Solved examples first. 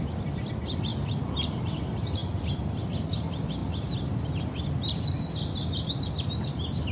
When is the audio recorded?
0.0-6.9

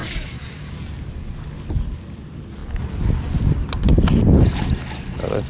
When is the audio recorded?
0.7-5.5

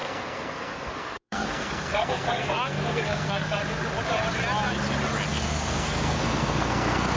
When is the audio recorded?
3.6-5.3